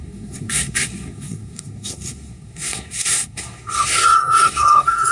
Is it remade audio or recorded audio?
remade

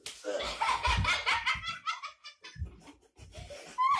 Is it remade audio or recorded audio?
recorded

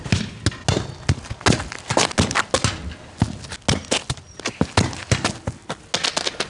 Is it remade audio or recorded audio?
recorded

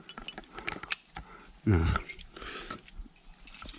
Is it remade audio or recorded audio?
recorded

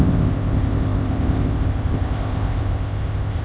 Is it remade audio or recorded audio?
remade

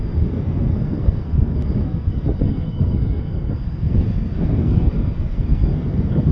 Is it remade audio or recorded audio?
remade